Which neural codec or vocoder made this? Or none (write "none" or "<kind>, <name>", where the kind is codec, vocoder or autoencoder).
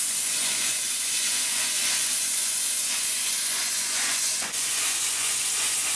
vocoder, Vocos